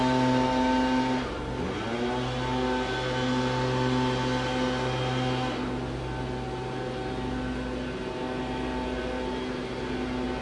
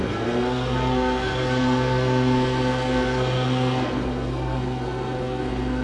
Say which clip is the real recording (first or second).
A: first